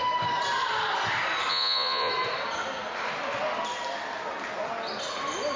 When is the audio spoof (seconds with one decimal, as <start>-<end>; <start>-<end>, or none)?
1.5-2.1